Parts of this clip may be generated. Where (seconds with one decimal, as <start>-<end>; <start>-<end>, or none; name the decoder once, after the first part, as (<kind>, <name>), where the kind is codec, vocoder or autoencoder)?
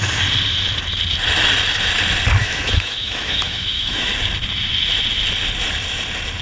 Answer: 2.4-4.1 (autoencoder, DAC-VAE)